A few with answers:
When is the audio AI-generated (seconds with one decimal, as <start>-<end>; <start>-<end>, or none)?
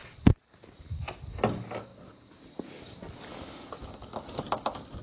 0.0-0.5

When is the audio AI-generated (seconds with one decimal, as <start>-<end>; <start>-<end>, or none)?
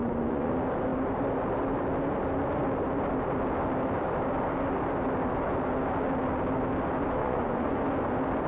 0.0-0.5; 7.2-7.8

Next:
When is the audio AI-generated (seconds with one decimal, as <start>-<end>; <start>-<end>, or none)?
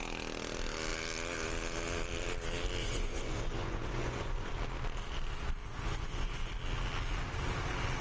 2.8-4.5; 5.6-6.5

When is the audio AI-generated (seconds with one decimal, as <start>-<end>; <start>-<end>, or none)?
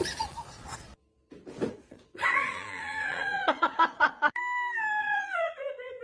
0.0-0.9; 1.7-4.4; 5.0-6.0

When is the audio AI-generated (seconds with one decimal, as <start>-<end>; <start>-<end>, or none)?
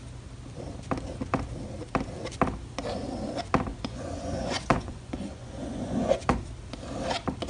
3.7-6.4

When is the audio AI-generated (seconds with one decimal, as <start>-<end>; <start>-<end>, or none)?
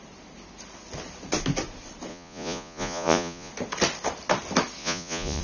2.1-3.5; 4.8-5.4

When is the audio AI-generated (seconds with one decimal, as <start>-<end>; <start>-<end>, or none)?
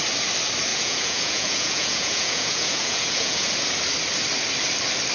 0.7-3.5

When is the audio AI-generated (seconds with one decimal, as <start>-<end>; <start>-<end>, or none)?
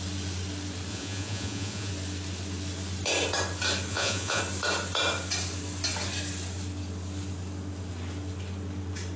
0.9-1.9; 3.9-4.4